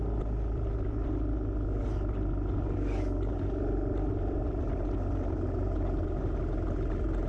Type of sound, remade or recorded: recorded